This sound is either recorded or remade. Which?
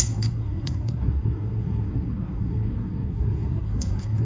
remade